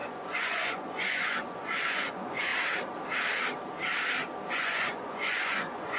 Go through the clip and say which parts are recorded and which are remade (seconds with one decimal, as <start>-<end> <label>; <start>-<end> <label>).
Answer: 0.0-2.5 remade; 2.5-4.5 recorded; 4.5-6.0 remade